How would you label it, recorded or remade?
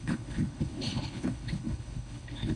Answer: remade